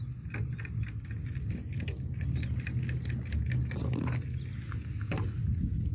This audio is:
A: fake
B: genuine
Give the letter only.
B